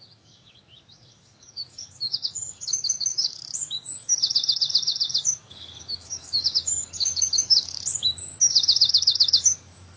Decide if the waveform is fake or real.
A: fake